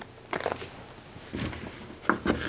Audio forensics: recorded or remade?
recorded